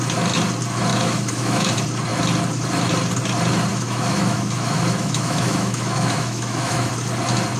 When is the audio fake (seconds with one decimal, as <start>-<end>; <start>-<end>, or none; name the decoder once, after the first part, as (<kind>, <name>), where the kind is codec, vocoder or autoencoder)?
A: 0.9-1.7 (autoencoder, DAC-VAE); 3.7-6.9